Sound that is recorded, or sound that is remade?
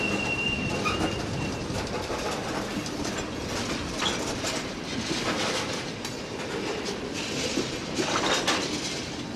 recorded